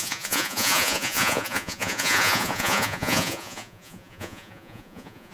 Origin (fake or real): fake